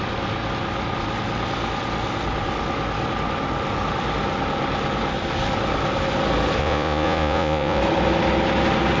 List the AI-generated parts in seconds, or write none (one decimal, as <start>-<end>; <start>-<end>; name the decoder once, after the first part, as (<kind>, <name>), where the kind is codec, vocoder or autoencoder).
6.6-7.8 (vocoder, Vocos)